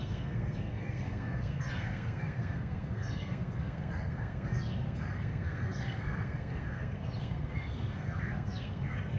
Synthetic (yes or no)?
yes